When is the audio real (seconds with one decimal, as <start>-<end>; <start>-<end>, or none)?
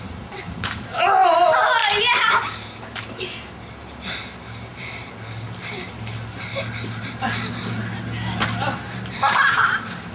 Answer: 0.0-10.1